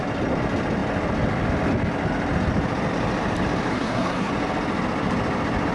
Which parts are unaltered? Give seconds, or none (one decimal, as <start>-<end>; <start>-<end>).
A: 0.0-3.7; 4.3-5.7